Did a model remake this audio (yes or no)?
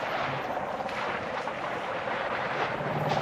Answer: no